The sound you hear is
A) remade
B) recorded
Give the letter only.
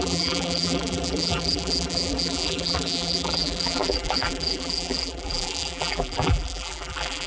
A